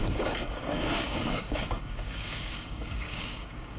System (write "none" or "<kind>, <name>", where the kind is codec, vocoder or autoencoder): codec, DAC